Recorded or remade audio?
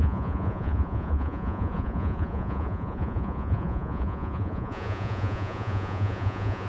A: remade